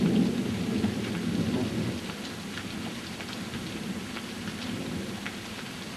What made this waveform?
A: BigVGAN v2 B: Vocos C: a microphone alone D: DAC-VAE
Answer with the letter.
C